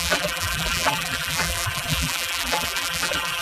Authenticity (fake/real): fake